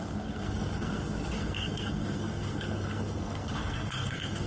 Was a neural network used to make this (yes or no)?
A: yes